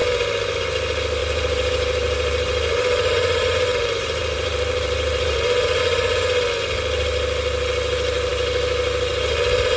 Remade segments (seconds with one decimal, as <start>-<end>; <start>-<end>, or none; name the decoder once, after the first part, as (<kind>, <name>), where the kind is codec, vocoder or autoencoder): 1.2-5.8 (vocoder, BigVGAN v2)